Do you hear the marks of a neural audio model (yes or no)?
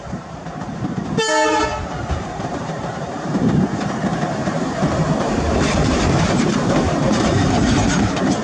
yes